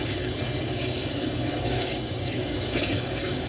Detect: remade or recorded remade